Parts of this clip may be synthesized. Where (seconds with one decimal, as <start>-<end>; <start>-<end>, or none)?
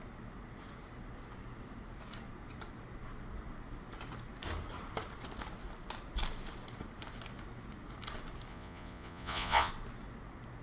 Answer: 8.5-9.7